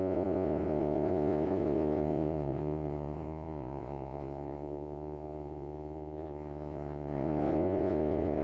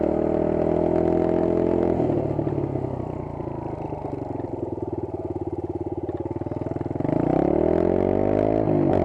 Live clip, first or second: second